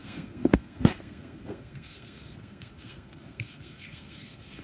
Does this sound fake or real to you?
fake